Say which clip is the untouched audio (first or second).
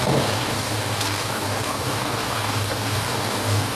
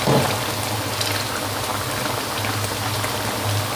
second